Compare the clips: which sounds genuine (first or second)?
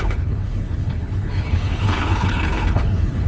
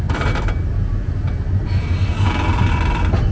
second